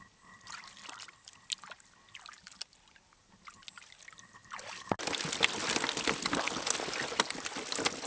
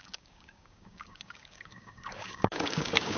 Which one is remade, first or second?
second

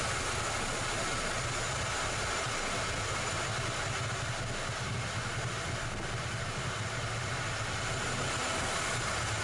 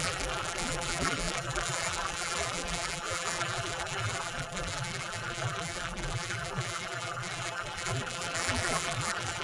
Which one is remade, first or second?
second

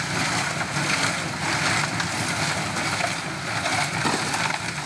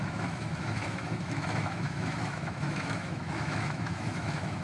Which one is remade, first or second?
second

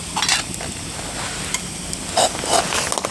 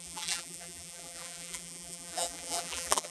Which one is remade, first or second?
second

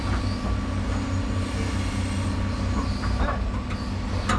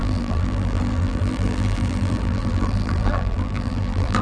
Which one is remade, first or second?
second